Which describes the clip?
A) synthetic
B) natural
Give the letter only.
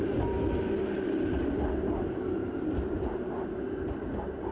B